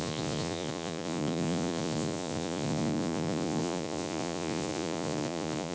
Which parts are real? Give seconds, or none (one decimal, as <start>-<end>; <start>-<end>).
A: none